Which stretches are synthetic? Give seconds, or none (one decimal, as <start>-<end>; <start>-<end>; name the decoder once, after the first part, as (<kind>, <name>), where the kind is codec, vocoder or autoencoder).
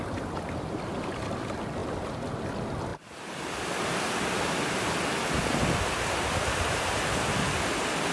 none